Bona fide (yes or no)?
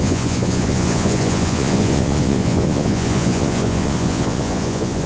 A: no